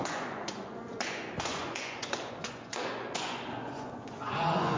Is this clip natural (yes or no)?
no